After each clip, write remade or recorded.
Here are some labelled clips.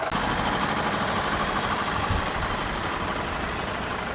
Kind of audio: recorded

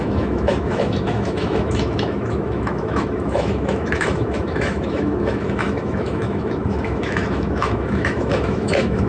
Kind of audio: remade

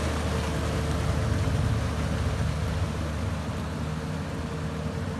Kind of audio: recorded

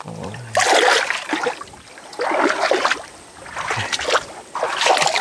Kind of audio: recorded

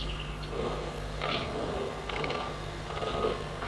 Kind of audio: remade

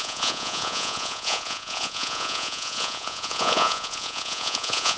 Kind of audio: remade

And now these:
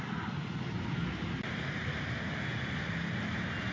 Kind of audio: recorded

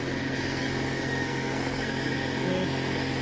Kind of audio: remade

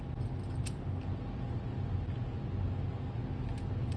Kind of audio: recorded